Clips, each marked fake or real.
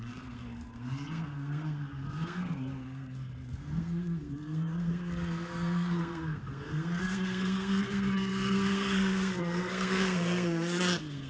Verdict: fake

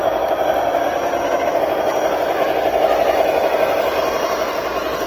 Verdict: real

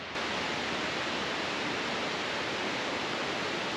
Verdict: real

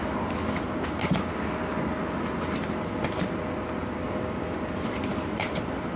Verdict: real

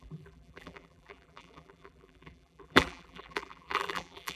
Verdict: fake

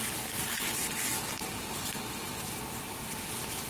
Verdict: real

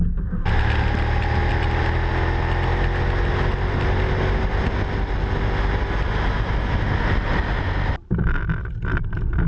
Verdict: real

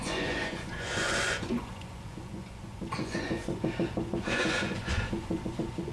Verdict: fake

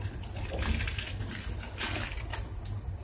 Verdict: real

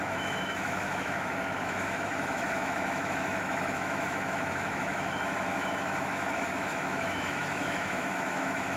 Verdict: fake